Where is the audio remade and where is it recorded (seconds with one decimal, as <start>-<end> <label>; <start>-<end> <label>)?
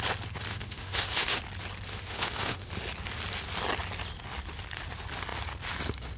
0.0-0.5 recorded; 0.5-1.4 remade; 1.4-1.9 recorded; 1.9-2.7 remade; 2.7-6.2 recorded